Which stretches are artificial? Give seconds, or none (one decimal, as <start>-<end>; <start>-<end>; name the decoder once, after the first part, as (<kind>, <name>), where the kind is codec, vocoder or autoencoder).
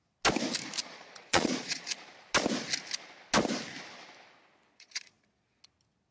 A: 0.8-1.9 (vocoder, Vocos); 4.7-5.6